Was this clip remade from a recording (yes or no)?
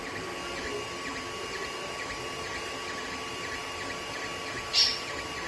no